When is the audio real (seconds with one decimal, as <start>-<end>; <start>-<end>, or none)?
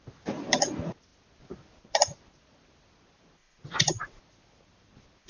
0.0-3.4; 4.2-5.3